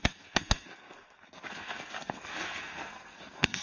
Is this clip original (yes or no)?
no